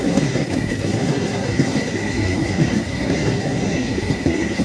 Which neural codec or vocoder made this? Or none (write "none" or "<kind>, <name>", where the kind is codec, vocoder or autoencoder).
codec, SNAC